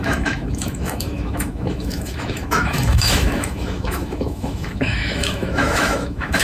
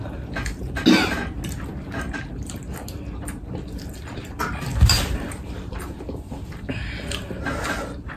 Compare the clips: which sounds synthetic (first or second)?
first